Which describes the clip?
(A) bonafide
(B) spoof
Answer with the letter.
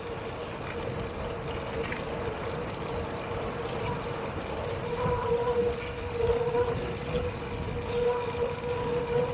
A